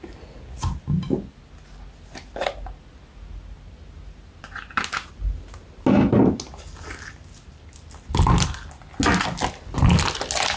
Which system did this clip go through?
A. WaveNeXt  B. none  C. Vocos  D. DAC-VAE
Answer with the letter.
B